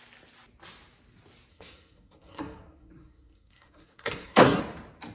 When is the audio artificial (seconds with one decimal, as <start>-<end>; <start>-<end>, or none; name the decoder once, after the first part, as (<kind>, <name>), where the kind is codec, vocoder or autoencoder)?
1.5-4.6 (codec, SNAC)